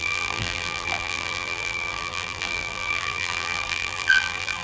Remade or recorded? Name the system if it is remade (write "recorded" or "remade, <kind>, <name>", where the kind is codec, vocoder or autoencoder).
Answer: remade, vocoder, BigVGAN v2